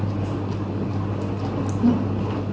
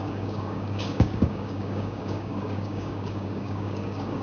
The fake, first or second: second